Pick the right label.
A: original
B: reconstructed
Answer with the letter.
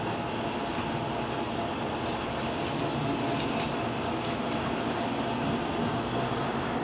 A